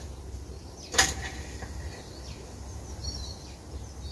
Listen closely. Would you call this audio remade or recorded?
recorded